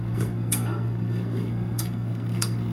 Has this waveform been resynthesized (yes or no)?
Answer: yes